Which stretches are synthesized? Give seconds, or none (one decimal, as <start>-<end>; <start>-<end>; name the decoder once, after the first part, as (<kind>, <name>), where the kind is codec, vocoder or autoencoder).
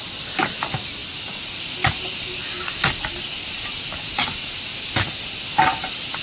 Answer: none